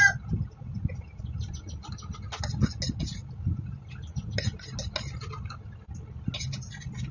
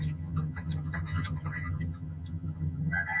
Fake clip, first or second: second